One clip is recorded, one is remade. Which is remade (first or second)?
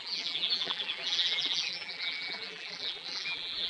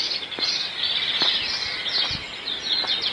first